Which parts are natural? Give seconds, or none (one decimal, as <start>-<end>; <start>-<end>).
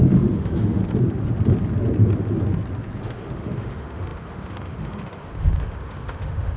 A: 0.8-3.0